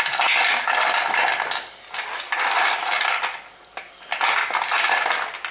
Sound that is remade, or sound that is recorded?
recorded